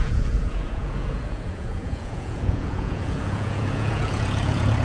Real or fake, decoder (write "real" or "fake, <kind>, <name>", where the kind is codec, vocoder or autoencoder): fake, vocoder, Vocos